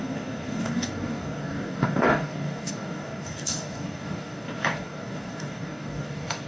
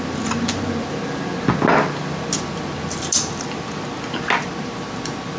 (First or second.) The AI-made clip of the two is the first